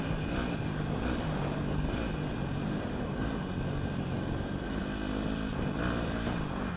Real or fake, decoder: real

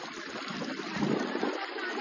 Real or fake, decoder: real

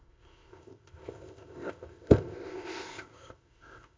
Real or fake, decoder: fake, codec, ZipCodec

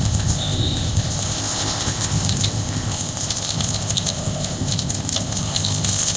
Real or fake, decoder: fake, codec, ZipCodec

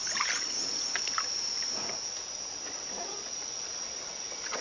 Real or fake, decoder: real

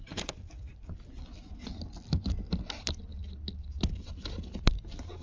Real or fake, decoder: real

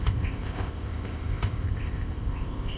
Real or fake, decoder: fake, codec, ZipCodec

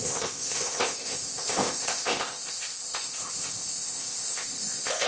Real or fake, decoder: fake, codec, ZipCodec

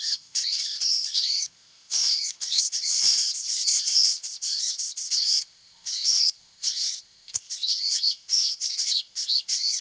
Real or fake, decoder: fake, codec, ZipCodec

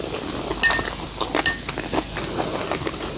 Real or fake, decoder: real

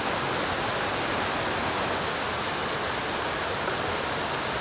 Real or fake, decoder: real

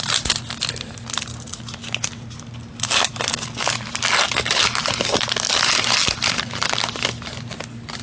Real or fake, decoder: real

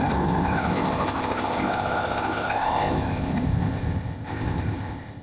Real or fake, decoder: fake, codec, ZipCodec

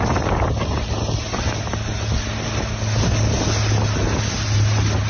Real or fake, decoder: real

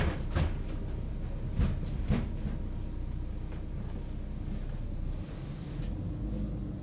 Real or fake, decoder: real